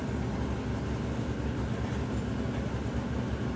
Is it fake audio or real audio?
real